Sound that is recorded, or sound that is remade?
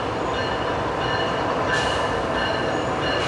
recorded